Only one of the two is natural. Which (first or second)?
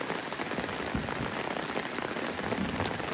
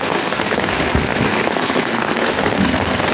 first